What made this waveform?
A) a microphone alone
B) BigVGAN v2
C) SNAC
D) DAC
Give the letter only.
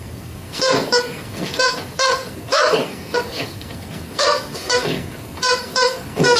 C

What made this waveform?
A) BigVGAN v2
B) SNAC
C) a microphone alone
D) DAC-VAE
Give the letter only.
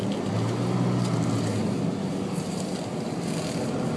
C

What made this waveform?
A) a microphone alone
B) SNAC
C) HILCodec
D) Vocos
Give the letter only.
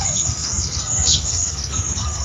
B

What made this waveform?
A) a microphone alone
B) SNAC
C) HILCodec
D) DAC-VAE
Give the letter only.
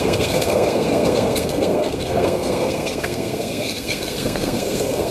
B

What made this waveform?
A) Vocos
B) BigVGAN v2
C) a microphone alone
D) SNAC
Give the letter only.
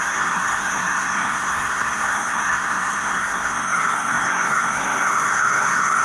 D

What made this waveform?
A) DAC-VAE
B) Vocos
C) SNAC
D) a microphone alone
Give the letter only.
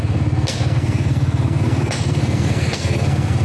C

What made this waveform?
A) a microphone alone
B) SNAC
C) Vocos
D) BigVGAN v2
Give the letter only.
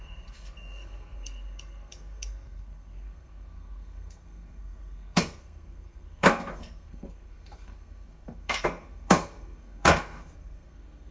B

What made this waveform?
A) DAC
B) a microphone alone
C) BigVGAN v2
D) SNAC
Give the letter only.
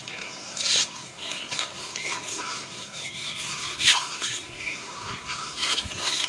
D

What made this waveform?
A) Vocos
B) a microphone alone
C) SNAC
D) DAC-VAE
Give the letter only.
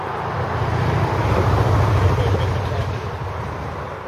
B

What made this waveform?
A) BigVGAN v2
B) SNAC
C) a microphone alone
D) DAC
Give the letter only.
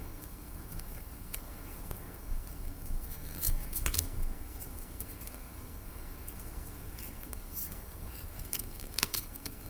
B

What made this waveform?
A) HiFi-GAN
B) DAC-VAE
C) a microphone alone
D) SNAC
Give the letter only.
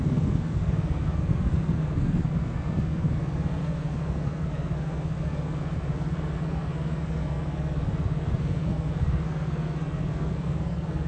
D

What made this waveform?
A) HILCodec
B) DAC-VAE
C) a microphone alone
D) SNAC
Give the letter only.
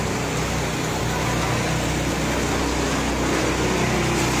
C